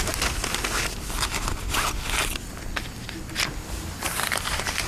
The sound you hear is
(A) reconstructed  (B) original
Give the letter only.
B